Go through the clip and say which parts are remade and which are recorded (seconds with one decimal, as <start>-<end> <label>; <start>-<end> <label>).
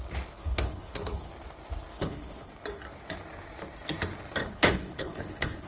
0.0-0.4 recorded; 0.4-1.3 remade; 1.3-1.9 recorded; 1.9-2.5 remade; 2.5-4.4 recorded; 4.4-5.7 remade